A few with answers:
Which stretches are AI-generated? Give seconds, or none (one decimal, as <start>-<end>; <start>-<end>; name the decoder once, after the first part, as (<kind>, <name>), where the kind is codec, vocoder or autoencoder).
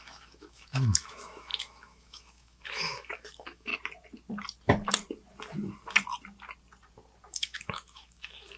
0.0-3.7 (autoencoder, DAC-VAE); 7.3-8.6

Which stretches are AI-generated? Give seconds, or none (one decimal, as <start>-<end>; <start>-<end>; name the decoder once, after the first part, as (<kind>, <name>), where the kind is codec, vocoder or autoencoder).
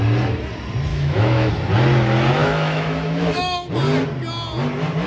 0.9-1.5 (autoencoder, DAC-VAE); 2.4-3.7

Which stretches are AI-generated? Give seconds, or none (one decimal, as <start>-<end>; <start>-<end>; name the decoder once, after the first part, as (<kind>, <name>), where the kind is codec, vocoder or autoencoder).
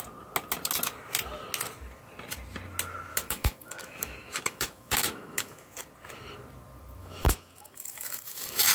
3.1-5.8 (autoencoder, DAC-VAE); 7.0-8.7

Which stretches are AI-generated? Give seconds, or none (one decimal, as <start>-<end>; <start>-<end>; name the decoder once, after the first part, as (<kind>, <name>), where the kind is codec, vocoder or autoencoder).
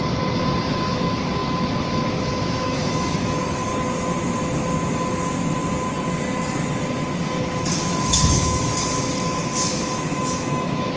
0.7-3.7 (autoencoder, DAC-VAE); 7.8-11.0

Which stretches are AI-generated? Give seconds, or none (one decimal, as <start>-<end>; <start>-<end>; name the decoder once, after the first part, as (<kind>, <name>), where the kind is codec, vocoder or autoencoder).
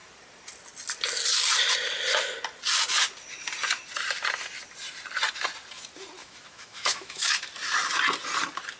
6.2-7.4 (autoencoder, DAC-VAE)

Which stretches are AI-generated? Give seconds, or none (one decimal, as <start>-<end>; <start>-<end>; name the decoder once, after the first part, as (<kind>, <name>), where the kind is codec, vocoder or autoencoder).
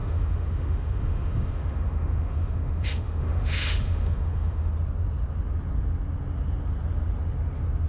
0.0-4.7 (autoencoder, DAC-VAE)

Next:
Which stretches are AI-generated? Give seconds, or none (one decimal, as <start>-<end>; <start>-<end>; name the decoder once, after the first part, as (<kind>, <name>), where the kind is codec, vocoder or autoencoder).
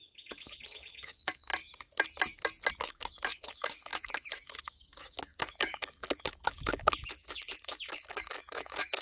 0.0-1.5 (autoencoder, DAC-VAE); 2.7-9.0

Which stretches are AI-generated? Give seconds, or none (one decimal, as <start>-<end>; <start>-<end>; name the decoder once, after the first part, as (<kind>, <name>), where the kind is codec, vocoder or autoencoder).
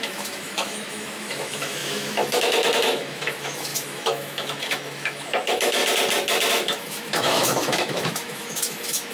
0.0-5.8 (autoencoder, DAC-VAE); 6.5-9.1